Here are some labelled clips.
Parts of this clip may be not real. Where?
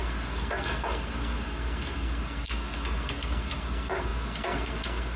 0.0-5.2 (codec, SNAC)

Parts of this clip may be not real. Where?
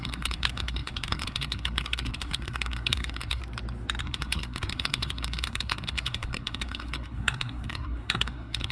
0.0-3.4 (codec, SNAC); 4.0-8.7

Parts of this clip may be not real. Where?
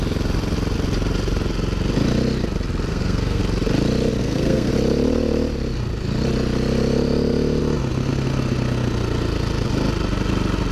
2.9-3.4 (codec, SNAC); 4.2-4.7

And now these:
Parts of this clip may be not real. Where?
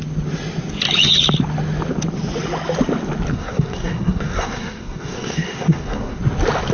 3.3-6.2 (codec, SNAC)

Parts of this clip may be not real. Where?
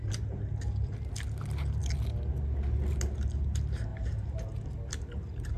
none